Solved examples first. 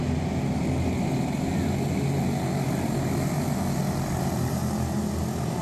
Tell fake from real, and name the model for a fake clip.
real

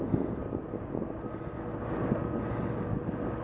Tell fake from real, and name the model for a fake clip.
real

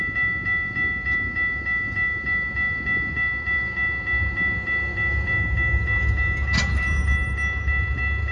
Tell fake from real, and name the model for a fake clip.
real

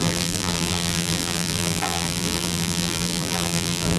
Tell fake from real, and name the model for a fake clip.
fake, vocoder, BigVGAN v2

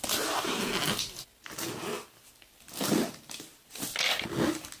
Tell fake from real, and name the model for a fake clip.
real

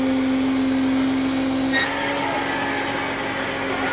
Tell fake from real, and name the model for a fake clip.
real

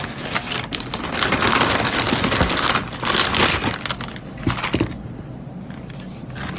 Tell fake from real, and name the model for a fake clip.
real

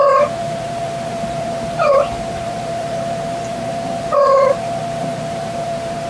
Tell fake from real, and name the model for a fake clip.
fake, vocoder, BigVGAN v2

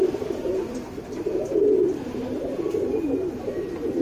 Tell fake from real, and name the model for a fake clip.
real